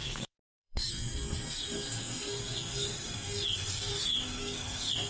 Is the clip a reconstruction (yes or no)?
yes